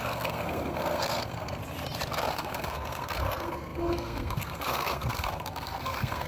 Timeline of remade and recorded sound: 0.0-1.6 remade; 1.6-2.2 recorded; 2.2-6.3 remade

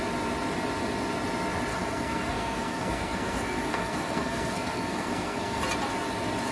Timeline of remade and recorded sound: 0.0-1.7 recorded; 1.7-5.6 remade; 5.6-6.5 recorded